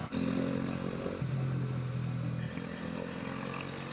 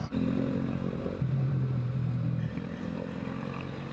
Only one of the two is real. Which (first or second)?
first